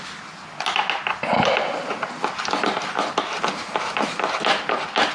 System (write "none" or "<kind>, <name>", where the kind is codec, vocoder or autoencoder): none